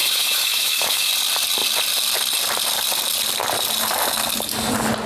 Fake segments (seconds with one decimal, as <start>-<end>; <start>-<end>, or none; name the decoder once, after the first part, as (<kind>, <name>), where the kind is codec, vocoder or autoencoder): 0.0-1.1 (autoencoder, DAC-VAE)